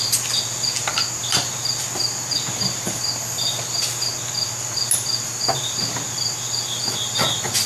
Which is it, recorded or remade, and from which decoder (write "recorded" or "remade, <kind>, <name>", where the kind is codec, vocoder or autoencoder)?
recorded